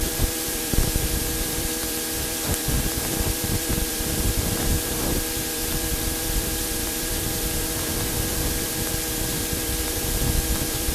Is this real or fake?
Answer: fake